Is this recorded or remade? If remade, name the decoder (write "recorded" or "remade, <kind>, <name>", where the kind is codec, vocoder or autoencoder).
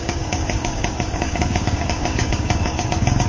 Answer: remade, codec, DAC